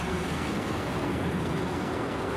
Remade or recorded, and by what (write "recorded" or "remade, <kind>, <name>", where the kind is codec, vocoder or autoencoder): remade, codec, SNAC